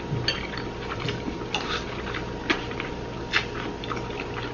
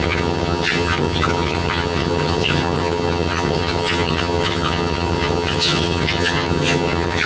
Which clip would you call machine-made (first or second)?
second